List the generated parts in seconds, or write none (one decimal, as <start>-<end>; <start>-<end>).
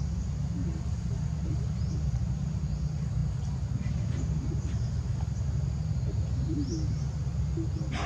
none